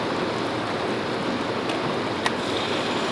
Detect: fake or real real